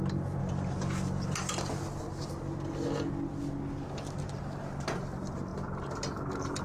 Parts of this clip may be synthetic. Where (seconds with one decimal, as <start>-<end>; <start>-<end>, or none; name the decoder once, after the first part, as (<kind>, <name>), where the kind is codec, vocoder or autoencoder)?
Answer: none